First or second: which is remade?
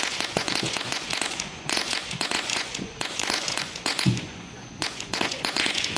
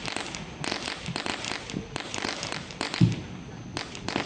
first